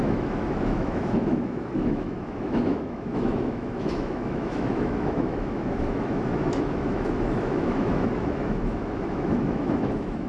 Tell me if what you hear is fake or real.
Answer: fake